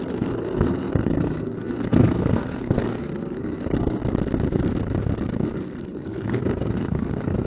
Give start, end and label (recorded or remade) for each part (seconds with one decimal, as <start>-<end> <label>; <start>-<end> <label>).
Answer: 0.0-4.0 remade; 4.0-5.9 recorded; 5.9-7.5 remade

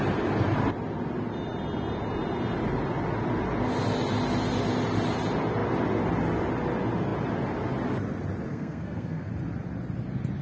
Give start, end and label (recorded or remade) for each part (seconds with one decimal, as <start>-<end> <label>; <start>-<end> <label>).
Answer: 0.0-8.5 recorded; 8.5-9.3 remade; 9.3-10.4 recorded